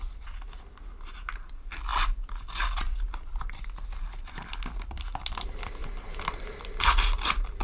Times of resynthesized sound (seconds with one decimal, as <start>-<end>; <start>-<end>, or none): none